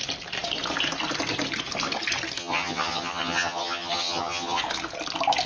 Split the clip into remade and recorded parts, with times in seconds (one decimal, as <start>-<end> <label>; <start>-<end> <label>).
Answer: 0.0-2.4 recorded; 2.4-4.6 remade; 4.6-5.5 recorded